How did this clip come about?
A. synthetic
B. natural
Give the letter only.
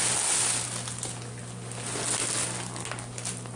B